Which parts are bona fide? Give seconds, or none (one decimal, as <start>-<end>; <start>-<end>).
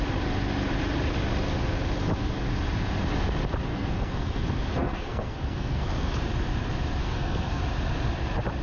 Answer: 0.0-3.7; 6.1-7.0; 7.6-8.6